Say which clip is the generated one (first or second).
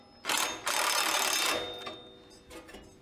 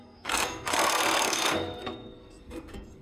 second